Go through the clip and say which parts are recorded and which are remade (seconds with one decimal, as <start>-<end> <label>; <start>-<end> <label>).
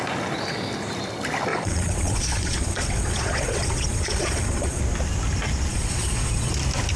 0.0-1.5 recorded; 1.5-4.8 remade; 4.8-5.7 recorded; 5.7-6.5 remade; 6.5-7.0 recorded